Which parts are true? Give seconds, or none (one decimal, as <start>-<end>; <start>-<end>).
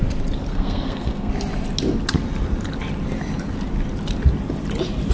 0.0-0.5; 1.3-5.1